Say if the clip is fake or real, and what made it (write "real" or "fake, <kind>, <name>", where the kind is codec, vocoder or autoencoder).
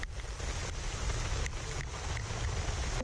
real